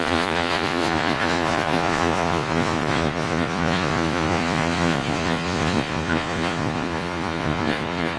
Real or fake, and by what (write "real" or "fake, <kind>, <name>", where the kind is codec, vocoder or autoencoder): fake, vocoder, Vocos